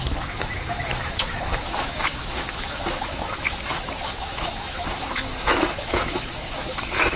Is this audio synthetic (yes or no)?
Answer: yes